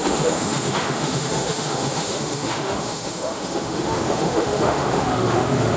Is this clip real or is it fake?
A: fake